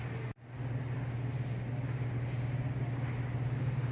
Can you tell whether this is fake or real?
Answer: real